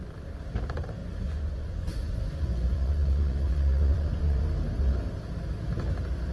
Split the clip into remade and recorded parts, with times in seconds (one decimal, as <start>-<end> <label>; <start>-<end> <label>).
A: 0.0-1.0 recorded; 1.0-4.4 remade; 4.4-6.3 recorded